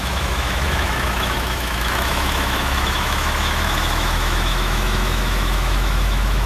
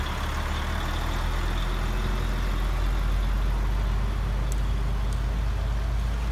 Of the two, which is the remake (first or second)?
first